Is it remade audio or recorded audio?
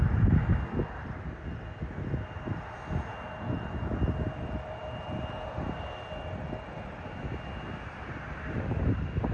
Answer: recorded